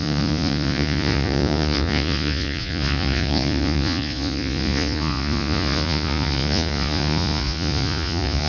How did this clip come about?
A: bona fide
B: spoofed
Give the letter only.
B